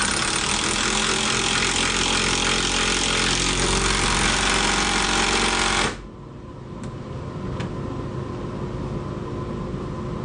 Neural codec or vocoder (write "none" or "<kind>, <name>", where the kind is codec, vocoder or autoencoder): none